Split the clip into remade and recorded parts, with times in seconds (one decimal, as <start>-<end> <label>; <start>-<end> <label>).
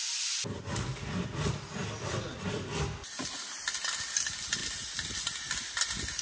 0.0-6.2 recorded